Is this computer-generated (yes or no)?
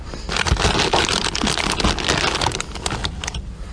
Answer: no